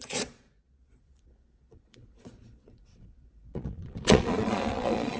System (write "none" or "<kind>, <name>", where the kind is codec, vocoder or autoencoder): vocoder, Vocos